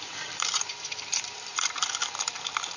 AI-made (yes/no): yes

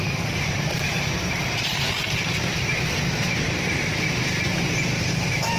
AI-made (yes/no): yes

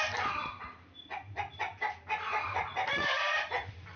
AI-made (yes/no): yes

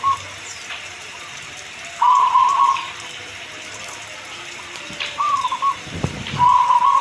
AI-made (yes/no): yes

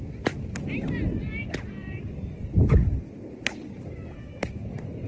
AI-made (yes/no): yes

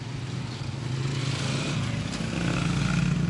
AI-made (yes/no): no